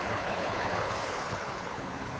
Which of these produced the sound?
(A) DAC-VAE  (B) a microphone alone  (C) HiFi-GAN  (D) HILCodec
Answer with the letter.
D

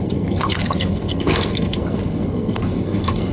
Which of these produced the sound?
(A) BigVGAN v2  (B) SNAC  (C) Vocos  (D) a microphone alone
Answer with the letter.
B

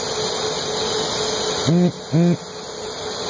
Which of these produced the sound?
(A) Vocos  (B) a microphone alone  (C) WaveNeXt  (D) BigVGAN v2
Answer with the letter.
B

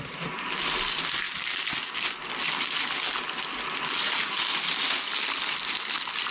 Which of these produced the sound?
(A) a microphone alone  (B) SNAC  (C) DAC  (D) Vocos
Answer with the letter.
A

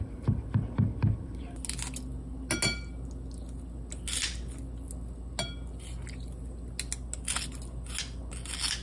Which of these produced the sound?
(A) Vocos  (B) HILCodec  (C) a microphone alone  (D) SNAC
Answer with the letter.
C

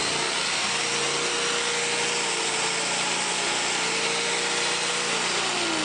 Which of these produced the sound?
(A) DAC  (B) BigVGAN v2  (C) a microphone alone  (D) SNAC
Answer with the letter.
C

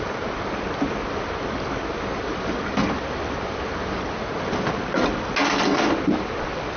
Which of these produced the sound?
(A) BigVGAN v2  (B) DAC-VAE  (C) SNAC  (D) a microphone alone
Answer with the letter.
D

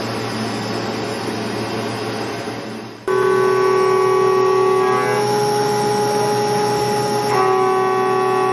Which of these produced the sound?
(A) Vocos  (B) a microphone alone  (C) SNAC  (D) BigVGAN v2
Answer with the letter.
B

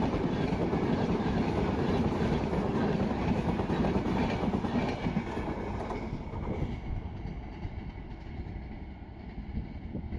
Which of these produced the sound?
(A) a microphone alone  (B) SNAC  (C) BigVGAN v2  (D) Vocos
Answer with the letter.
A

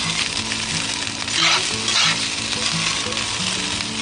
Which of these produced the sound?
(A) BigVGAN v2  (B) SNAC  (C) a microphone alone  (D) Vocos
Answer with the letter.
C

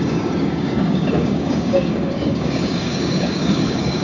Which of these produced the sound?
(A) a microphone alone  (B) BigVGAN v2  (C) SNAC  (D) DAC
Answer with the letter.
D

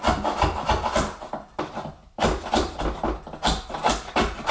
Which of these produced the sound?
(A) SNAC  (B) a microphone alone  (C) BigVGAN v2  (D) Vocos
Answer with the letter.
B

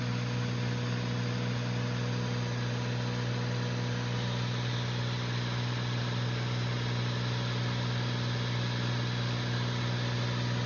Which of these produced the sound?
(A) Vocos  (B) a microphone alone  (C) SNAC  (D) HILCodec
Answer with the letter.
B